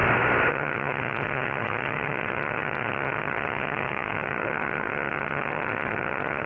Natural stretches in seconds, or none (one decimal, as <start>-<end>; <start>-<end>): 0.0-0.5